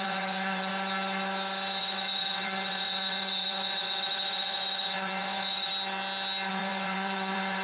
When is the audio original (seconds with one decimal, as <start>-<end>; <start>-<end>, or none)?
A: 0.7-1.8; 5.7-6.5